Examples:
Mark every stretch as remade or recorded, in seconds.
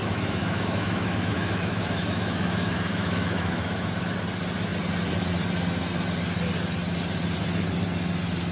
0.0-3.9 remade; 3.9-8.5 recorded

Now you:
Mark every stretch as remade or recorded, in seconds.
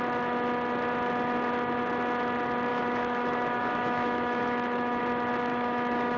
0.0-2.7 recorded; 2.7-5.0 remade; 5.0-5.5 recorded; 5.5-6.2 remade